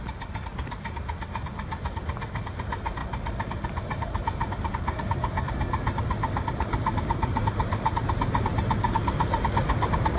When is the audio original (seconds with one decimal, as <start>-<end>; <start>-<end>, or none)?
0.0-10.2